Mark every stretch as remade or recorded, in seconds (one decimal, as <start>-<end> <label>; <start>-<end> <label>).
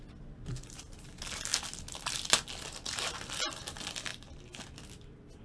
0.0-5.4 recorded